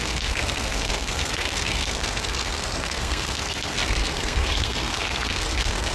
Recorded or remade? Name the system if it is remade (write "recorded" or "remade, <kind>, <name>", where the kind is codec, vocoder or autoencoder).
remade, codec, SNAC